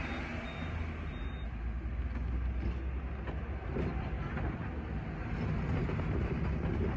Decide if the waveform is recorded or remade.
recorded